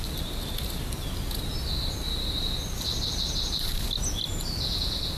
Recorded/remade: recorded